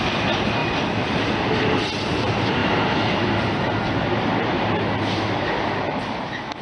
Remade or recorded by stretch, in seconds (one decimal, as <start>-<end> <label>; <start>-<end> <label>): 0.0-6.6 recorded